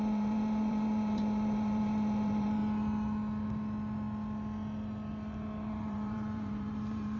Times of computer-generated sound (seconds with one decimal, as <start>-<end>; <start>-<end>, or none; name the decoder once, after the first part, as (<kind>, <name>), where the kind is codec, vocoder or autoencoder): 0.0-2.6 (vocoder, BigVGAN v2); 5.7-7.2